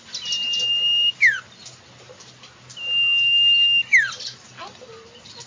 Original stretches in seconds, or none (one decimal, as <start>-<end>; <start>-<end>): 0.0-5.5